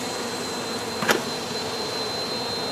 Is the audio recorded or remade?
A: recorded